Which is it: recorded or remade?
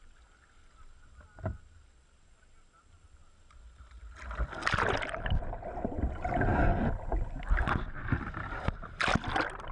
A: recorded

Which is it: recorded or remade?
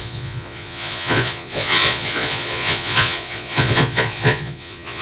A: remade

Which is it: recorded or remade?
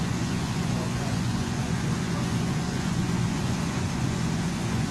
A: remade